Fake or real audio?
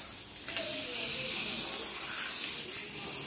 real